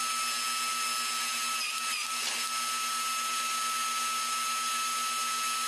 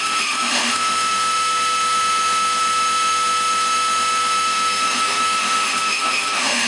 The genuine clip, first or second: first